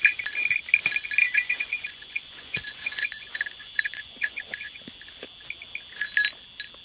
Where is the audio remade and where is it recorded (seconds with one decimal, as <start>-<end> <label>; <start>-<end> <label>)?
0.0-1.2 recorded; 1.2-4.8 remade; 4.8-6.8 recorded